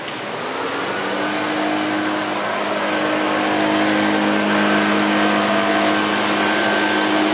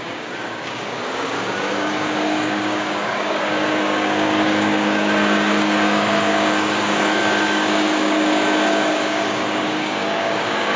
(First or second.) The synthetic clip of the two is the second